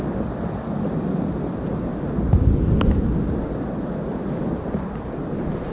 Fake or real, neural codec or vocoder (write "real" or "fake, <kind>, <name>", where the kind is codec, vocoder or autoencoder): real